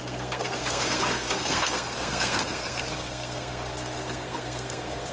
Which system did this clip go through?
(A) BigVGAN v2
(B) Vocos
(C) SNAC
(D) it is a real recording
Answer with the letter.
C